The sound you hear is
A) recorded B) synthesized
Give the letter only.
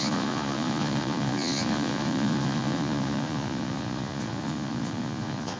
B